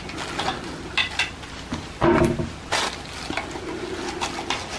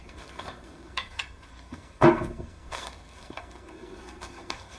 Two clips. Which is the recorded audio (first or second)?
first